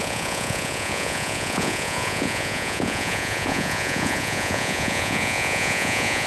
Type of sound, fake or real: fake